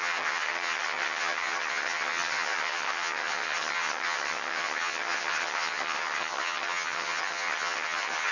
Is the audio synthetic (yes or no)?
yes